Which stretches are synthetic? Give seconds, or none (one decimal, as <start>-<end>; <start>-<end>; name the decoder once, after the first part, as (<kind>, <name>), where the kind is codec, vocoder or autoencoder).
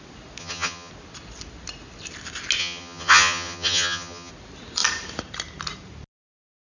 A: 0.4-0.9 (vocoder, HiFi-GAN); 2.6-4.3